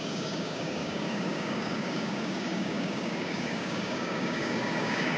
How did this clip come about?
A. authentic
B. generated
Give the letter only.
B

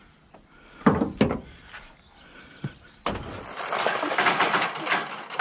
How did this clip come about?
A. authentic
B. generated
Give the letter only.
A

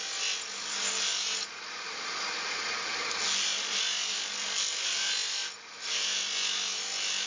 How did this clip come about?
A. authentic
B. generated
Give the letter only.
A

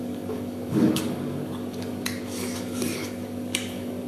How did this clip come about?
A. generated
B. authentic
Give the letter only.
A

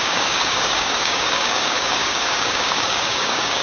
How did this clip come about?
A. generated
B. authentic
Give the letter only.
A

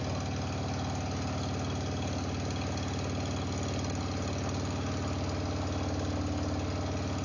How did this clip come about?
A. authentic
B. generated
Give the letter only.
A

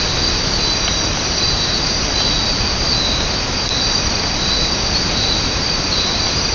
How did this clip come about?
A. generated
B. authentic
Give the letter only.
B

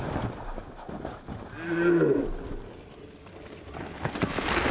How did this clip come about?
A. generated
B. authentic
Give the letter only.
B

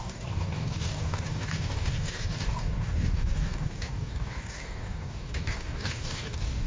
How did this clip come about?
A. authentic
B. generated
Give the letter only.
B